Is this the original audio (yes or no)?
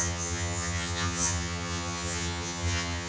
no